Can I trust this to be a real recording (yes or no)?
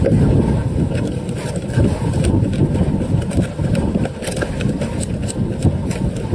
yes